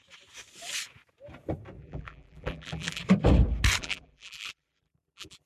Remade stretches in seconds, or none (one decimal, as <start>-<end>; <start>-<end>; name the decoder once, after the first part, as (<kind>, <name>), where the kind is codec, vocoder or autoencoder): 1.8-3.0 (vocoder, BigVGAN v2); 3.8-5.5